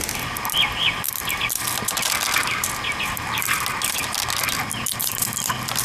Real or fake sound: fake